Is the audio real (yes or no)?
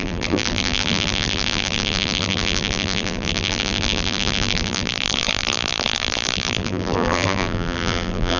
no